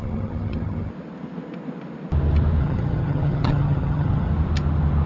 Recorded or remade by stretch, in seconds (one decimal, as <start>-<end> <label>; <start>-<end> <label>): 0.0-0.9 remade; 0.9-2.6 recorded; 2.6-4.3 remade; 4.3-5.1 recorded